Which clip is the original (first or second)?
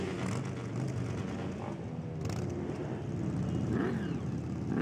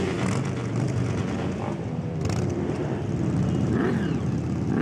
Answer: first